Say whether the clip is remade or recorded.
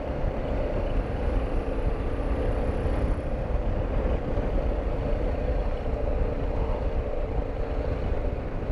recorded